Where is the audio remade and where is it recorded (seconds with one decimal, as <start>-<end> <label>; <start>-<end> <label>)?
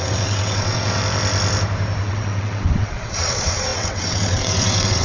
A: 0.0-1.0 remade; 1.0-2.0 recorded; 2.0-5.0 remade